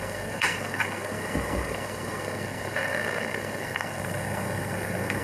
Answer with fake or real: fake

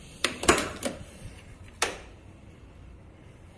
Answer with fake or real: fake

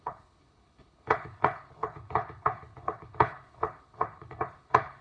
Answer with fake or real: fake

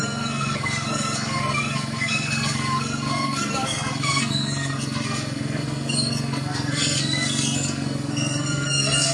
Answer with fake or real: fake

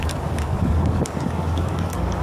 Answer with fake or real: fake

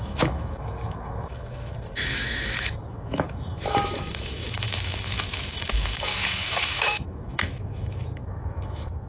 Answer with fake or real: fake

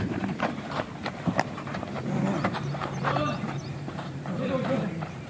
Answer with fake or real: fake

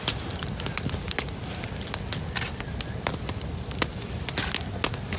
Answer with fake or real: real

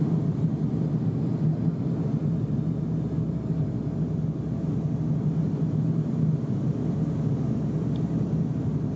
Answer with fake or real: fake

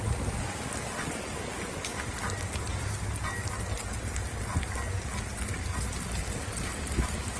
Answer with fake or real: real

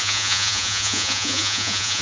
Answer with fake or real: fake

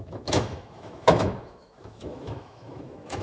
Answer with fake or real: fake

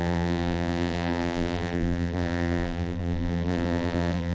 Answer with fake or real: fake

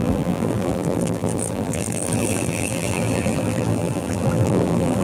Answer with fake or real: fake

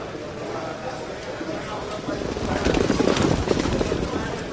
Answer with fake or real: fake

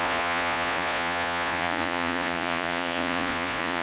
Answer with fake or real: fake